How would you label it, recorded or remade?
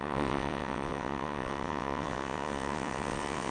remade